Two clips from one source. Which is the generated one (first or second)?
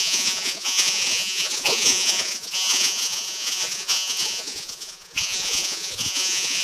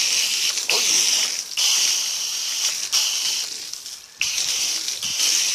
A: first